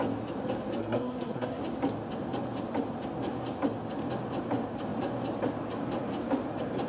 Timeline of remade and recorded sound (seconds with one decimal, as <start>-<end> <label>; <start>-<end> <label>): 0.0-0.8 recorded; 0.8-1.6 remade; 1.6-6.9 recorded